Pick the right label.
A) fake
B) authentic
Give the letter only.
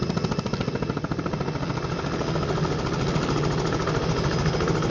B